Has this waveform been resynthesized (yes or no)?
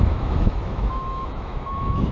yes